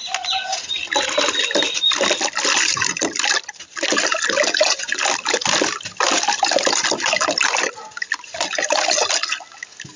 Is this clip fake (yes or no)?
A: no